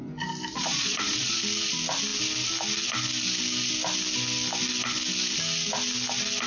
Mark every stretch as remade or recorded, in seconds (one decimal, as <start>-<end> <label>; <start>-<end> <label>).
0.0-0.5 recorded; 0.5-1.4 remade; 1.4-6.5 recorded

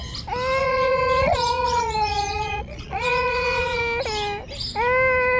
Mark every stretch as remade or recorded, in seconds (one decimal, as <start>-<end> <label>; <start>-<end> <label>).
0.0-0.6 recorded; 0.6-3.8 remade; 3.8-5.4 recorded

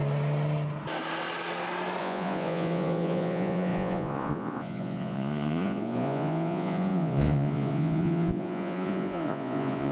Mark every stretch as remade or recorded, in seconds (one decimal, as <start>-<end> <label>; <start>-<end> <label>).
0.0-2.0 recorded; 2.0-9.9 remade

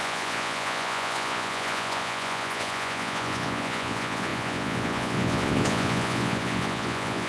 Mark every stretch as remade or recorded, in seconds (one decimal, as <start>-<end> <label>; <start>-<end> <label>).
0.0-7.3 remade

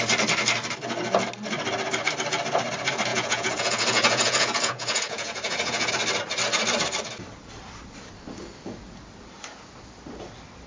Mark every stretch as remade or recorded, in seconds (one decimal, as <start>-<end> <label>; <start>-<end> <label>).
0.0-3.1 recorded; 3.1-5.9 remade; 5.9-10.7 recorded

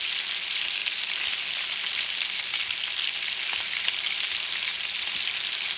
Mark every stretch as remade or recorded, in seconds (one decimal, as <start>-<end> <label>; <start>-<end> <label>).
0.0-5.8 recorded